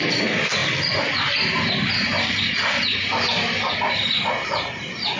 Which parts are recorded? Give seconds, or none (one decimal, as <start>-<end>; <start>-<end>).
0.0-5.2